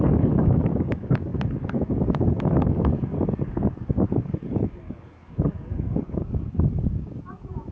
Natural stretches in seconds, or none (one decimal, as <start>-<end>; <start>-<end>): none